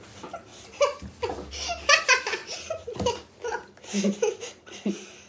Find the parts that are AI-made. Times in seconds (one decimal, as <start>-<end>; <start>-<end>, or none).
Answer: none